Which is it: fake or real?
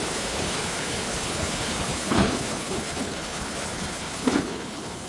fake